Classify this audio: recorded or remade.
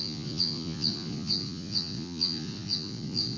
remade